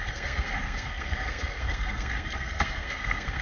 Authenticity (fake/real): fake